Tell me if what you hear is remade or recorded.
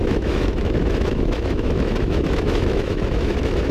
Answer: remade